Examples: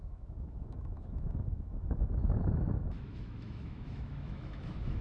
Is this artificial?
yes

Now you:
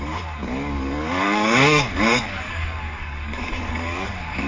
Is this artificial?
yes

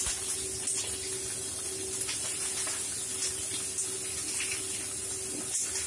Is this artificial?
no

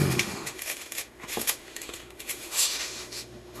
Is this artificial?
yes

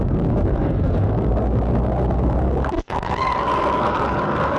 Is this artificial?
yes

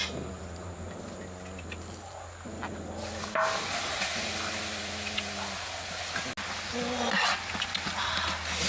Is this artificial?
no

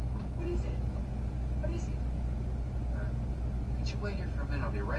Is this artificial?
no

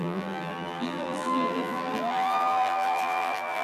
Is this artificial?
yes